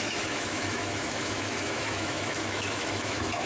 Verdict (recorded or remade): remade